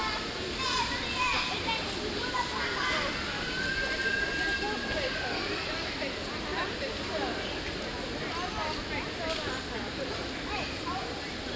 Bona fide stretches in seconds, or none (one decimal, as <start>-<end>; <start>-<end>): 0.0-11.6